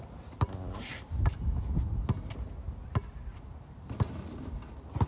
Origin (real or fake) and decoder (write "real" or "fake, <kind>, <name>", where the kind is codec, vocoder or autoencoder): real